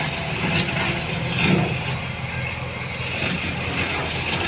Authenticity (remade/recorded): recorded